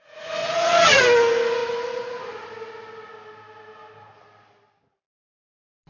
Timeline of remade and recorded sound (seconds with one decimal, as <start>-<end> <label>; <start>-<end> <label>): 0.0-0.4 recorded; 0.4-1.0 remade; 1.0-5.9 recorded

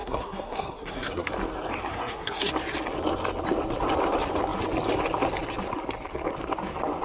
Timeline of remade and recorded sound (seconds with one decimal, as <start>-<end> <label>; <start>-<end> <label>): 0.0-1.3 remade; 1.3-1.9 recorded; 1.9-2.5 remade; 2.5-7.0 recorded